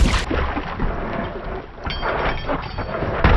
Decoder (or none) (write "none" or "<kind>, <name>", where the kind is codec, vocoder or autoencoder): none